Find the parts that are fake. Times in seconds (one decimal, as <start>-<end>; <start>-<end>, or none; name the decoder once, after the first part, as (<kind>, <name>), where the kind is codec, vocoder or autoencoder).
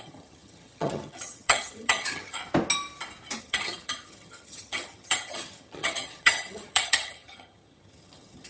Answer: 0.0-2.4 (vocoder, HiFi-GAN); 3.4-8.5